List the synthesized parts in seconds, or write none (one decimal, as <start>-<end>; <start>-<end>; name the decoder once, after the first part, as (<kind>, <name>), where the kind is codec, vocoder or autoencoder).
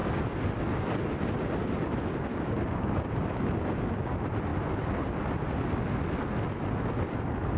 2.3-4.1 (codec, DAC)